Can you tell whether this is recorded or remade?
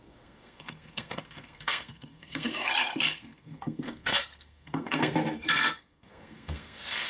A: remade